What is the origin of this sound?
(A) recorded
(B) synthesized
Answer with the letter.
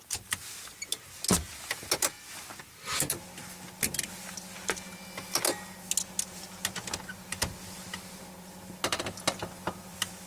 A